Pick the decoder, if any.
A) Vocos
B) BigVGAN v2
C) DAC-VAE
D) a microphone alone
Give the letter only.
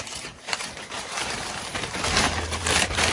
B